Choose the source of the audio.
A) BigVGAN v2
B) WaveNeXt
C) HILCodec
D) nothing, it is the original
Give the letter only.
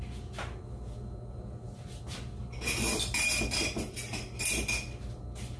D